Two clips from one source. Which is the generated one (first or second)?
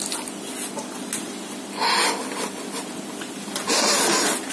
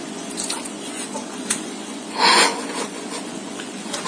second